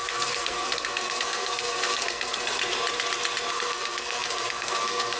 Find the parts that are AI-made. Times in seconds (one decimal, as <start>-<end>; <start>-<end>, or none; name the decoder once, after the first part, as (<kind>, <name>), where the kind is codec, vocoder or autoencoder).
0.0-2.6 (codec, SNAC); 3.5-5.2